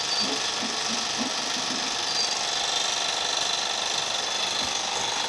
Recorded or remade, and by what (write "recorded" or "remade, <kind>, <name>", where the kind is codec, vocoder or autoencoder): recorded